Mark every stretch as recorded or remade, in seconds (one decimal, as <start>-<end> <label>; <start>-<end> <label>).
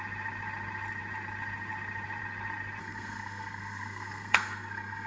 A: 0.0-2.8 recorded; 2.8-5.1 remade